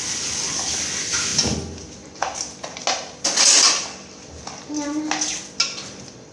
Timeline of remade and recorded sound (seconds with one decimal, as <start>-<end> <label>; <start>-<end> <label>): 0.0-6.3 recorded